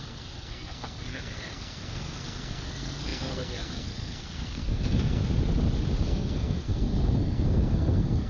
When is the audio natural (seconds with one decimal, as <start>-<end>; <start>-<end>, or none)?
5.2-6.0